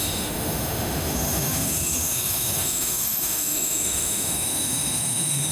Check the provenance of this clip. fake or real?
fake